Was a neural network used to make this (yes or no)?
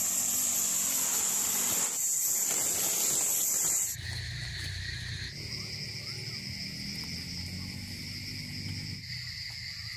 no